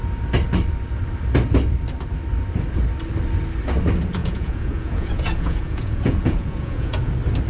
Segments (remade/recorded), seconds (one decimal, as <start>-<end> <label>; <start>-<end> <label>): 0.0-4.2 recorded; 4.2-7.1 remade; 7.1-7.5 recorded